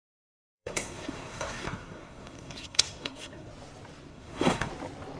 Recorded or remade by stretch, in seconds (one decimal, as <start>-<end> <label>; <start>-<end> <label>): 0.0-0.4 recorded; 0.4-3.5 remade; 3.5-4.1 recorded; 4.1-4.7 remade; 4.7-5.2 recorded